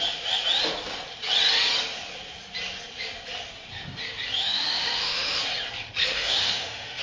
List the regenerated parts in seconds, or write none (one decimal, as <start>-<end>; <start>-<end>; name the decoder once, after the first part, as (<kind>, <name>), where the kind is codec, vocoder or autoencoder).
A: 4.4-5.4 (autoencoder, DAC-VAE); 6.0-7.0